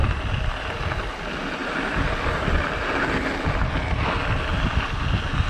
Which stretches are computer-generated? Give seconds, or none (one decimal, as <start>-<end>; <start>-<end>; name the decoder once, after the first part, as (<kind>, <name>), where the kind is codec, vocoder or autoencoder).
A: none